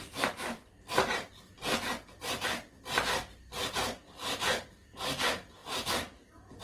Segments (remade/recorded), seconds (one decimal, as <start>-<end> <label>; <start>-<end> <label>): 0.0-6.6 recorded